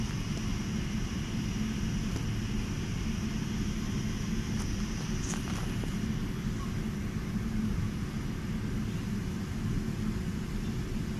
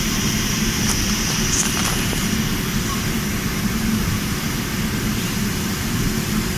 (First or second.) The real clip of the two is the first